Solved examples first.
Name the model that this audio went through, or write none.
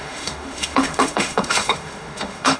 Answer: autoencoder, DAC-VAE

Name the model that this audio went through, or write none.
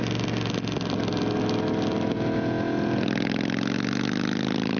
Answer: none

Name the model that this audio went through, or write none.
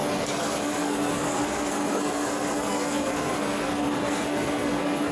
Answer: codec, SNAC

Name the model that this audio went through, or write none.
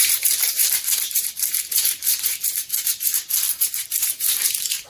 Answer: vocoder, BigVGAN v2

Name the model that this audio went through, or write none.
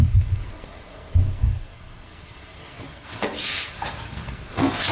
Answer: codec, SNAC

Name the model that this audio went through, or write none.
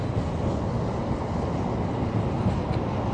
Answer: none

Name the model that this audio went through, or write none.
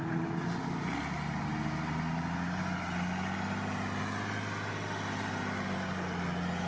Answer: none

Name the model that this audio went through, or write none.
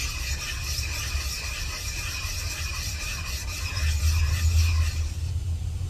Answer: none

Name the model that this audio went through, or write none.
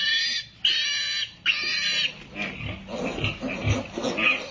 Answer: none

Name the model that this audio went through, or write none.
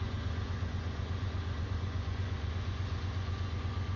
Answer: vocoder, Vocos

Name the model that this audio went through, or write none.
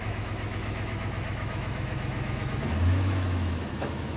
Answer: autoencoder, DAC-VAE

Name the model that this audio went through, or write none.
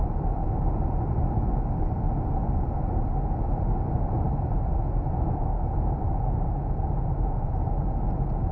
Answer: none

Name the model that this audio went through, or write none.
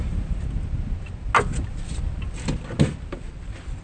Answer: none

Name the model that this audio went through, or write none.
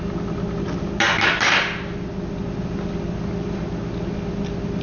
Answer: none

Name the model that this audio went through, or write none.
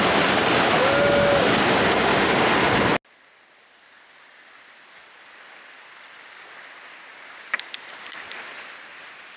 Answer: none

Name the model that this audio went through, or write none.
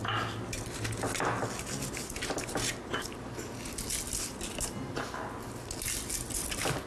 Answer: none